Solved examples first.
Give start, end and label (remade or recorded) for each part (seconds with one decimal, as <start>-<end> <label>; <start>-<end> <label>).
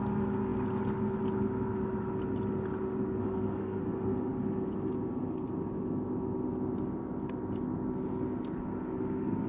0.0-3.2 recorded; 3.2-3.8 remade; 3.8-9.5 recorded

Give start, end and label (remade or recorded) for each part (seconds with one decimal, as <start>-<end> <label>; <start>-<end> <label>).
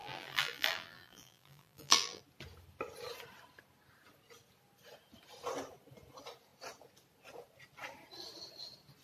0.0-2.2 remade; 2.2-9.0 recorded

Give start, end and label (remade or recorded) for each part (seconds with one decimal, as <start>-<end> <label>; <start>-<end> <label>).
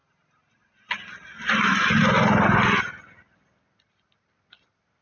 0.0-5.0 recorded